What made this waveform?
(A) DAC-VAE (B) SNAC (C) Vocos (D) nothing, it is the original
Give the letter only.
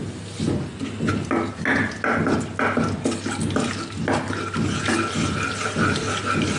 D